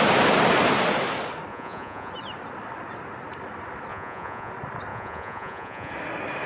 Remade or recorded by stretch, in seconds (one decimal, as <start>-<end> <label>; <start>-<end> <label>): 0.0-1.5 recorded; 1.5-2.1 remade; 2.1-3.9 recorded; 3.9-4.5 remade; 4.5-4.9 recorded; 4.9-5.9 remade; 5.9-6.5 recorded